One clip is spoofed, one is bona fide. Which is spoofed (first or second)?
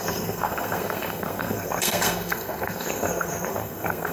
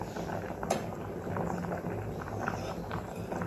first